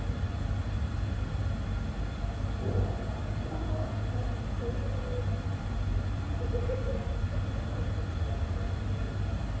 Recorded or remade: recorded